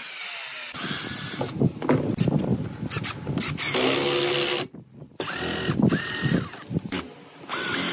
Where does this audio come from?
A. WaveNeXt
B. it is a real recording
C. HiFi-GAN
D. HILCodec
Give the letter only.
B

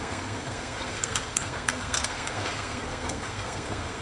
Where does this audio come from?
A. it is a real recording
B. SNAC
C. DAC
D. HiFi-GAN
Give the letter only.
B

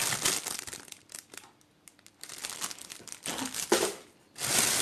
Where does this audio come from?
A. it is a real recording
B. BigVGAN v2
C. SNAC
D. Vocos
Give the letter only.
A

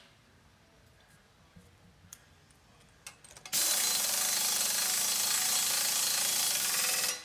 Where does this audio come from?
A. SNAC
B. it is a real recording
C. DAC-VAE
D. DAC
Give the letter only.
B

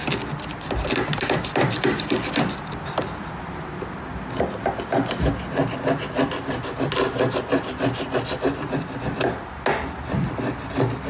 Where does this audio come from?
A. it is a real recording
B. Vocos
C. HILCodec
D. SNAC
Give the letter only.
A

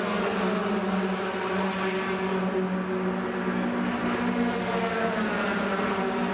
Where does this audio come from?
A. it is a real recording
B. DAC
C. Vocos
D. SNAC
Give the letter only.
A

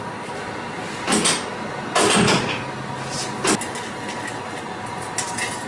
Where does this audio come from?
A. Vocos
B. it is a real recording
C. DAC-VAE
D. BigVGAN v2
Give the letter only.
B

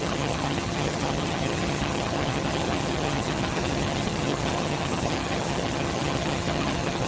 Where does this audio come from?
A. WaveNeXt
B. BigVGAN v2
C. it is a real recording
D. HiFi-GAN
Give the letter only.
D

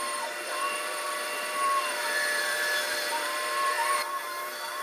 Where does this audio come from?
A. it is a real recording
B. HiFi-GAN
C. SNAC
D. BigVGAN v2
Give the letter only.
D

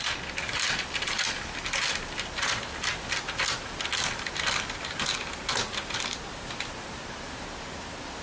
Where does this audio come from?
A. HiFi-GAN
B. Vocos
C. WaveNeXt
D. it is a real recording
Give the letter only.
D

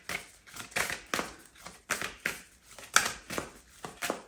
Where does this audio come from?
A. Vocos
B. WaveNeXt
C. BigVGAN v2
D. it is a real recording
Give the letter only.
D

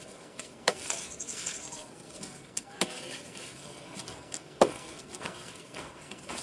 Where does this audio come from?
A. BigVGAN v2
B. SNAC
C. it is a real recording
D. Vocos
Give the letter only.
B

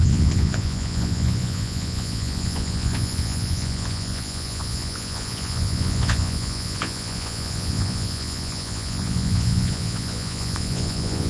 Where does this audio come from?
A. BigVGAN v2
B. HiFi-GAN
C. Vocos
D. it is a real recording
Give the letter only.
C